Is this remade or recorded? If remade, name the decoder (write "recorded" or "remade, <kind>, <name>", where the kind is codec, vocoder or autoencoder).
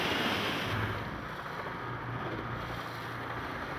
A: recorded